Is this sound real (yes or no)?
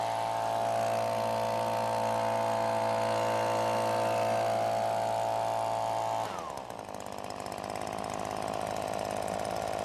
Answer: yes